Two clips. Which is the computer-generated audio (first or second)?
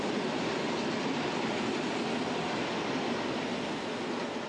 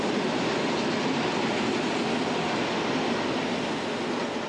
first